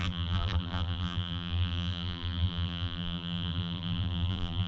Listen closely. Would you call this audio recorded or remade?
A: remade